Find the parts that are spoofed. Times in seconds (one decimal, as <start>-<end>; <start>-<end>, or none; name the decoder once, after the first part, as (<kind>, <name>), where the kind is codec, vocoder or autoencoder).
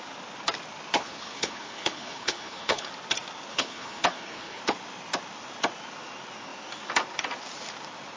1.0-2.9 (codec, HILCodec); 3.5-4.6